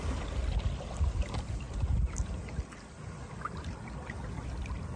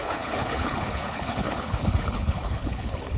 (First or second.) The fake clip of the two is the second